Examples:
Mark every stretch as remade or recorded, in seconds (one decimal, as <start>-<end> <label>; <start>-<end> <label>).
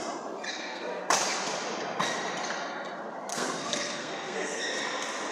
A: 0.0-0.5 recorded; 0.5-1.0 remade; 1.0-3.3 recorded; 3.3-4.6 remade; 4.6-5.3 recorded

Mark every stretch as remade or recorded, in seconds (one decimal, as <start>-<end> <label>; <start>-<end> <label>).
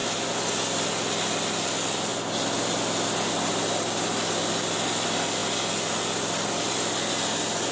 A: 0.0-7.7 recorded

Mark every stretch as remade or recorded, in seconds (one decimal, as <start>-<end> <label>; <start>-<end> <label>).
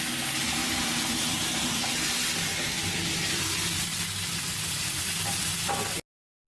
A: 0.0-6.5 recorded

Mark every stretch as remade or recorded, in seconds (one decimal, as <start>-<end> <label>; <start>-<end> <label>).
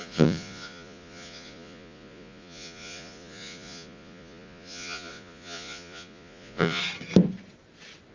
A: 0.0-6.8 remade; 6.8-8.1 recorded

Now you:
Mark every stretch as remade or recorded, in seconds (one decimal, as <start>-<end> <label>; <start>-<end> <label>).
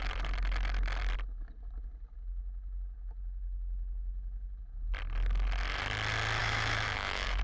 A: 0.0-6.4 recorded; 6.4-7.4 remade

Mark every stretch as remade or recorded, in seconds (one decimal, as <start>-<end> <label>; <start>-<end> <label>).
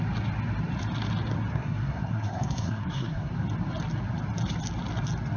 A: 0.0-1.5 recorded; 1.5-3.3 remade; 3.3-5.4 recorded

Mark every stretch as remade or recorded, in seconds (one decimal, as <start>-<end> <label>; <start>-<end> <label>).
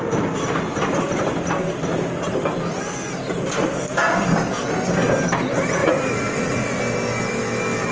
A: 0.0-5.8 recorded; 5.8-6.8 remade; 6.8-7.9 recorded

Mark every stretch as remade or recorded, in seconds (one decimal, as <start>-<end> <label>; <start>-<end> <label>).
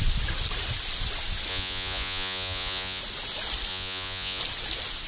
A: 0.0-1.5 recorded; 1.5-3.0 remade; 3.0-3.7 recorded; 3.7-4.4 remade; 4.4-5.1 recorded